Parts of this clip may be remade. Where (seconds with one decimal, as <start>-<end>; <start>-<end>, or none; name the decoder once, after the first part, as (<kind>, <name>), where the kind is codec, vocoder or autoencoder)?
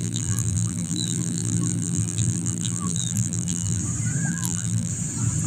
0.0-3.8 (vocoder, BigVGAN v2); 4.3-4.9